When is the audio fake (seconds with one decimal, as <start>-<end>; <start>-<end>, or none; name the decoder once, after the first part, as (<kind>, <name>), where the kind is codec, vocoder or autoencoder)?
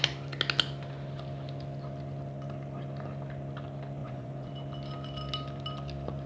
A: 4.0-4.5 (vocoder, Vocos)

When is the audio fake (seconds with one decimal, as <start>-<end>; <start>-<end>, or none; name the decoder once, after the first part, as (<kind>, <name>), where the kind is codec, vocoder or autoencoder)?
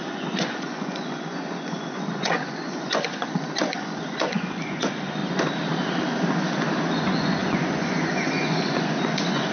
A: 0.0-5.2 (vocoder, Vocos); 6.8-9.5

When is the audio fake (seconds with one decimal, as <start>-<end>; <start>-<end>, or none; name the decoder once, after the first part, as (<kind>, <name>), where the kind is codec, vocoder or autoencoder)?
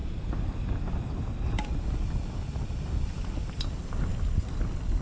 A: none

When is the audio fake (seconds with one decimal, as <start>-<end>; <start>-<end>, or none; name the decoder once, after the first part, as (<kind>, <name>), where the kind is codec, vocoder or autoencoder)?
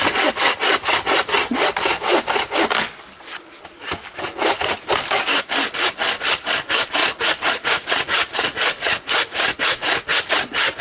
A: 7.0-10.3 (vocoder, Vocos)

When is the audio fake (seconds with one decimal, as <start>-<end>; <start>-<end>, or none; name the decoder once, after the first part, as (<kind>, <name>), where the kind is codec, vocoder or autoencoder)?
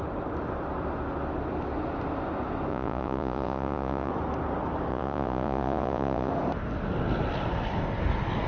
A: 2.7-4.1 (vocoder, Vocos); 4.9-6.3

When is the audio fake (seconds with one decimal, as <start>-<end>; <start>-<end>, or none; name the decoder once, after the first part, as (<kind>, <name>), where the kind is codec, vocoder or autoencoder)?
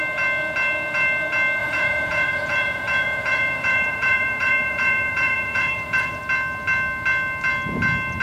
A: 1.6-6.2 (vocoder, Vocos)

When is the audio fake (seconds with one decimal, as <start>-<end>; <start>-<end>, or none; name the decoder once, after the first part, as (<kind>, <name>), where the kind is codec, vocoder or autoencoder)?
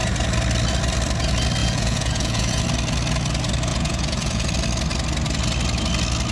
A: 1.6-2.6 (vocoder, Vocos); 3.7-4.5